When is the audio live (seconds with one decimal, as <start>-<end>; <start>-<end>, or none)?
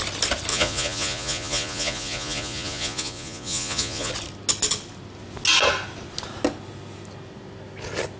0.0-0.5; 4.1-8.2